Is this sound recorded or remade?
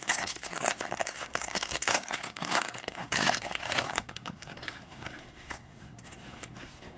remade